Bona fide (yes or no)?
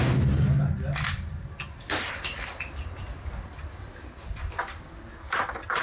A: yes